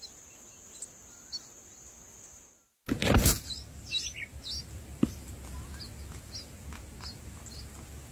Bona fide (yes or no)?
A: yes